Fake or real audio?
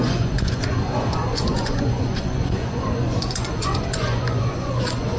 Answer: fake